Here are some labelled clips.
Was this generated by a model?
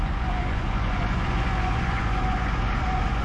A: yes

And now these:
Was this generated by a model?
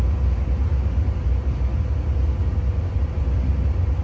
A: no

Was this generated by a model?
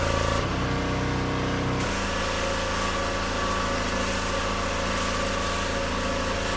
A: no